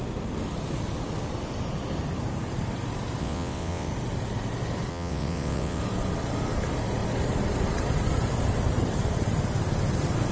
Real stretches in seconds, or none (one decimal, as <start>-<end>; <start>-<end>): 0.0-3.2; 3.9-4.9; 5.8-10.3